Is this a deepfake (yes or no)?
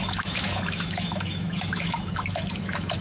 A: yes